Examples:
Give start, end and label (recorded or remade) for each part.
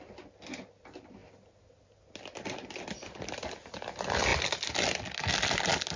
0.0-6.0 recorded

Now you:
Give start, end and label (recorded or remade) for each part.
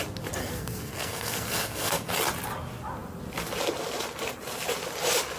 0.0-0.4 recorded; 0.4-2.1 remade; 2.1-5.4 recorded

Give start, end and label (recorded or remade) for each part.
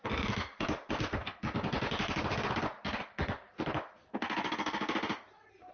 0.0-4.1 recorded; 4.1-5.0 remade; 5.0-5.7 recorded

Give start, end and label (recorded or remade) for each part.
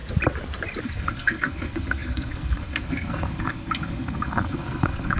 0.0-0.8 recorded; 0.8-5.2 remade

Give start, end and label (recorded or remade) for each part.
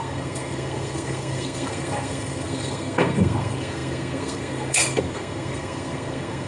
0.0-6.5 remade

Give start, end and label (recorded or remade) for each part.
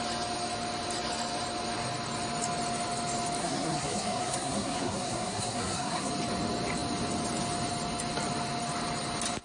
0.0-3.4 recorded; 3.4-6.1 remade; 6.1-9.4 recorded